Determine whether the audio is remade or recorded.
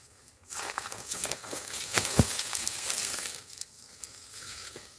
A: remade